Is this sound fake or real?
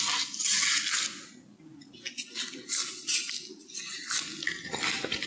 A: real